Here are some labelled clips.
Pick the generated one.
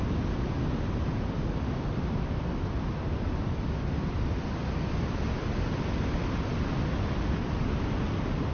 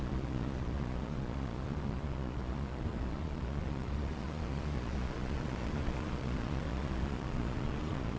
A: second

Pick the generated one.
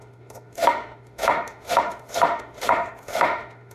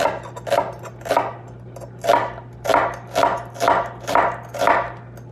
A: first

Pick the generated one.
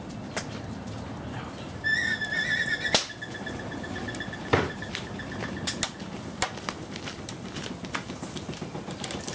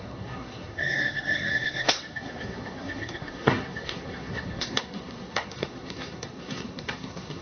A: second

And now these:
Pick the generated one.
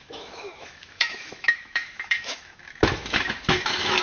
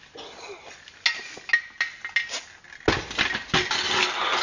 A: first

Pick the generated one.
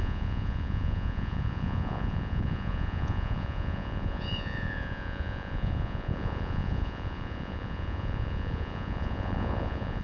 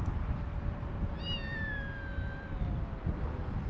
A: first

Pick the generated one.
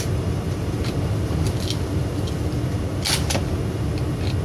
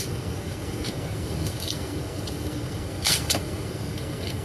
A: second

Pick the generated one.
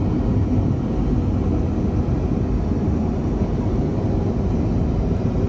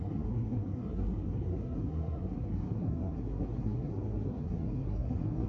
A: second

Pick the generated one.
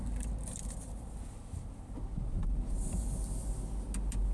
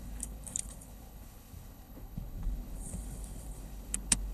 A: second